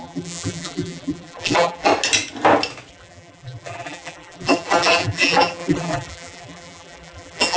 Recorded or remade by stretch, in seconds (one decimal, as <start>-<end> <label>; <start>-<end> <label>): 0.0-1.9 remade; 1.9-2.9 recorded; 2.9-7.6 remade